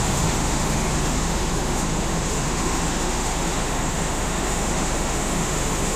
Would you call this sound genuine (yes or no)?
no